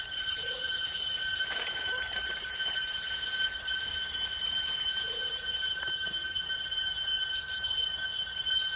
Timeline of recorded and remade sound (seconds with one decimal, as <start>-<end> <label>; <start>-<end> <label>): 0.0-4.0 remade; 4.0-4.6 recorded; 4.6-7.1 remade; 7.1-8.8 recorded